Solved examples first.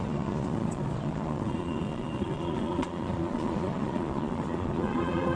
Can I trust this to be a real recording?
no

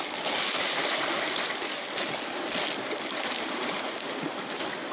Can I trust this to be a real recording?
yes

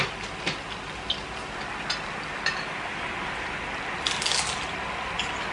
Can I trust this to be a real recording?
yes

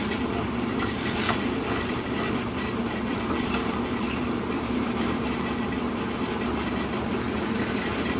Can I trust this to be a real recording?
no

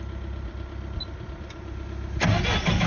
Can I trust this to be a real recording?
yes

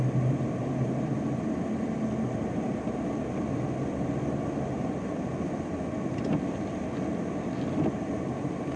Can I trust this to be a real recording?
yes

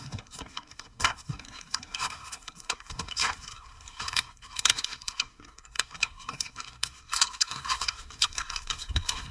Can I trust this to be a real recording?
no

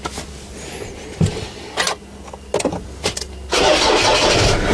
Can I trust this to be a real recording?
yes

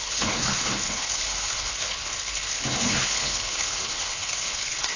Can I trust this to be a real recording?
no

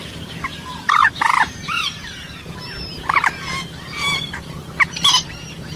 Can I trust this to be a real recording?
no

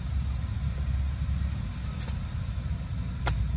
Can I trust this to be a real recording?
yes